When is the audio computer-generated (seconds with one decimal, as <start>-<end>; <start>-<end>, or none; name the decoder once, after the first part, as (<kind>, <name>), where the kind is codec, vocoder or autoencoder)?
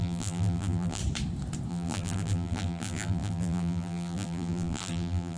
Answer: 0.0-1.0 (vocoder, BigVGAN v2); 1.7-5.4